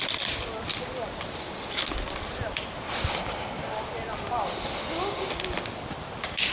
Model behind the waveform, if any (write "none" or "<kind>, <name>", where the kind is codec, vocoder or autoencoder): none